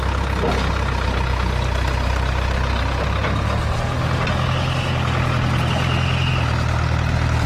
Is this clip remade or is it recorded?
recorded